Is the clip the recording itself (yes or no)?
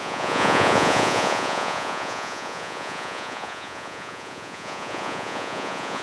no